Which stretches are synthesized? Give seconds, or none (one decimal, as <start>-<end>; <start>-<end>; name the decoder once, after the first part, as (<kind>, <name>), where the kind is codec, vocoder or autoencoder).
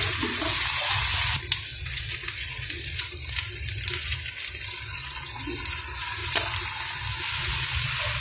1.7-3.0 (vocoder, Vocos); 4.9-5.4; 7.4-8.2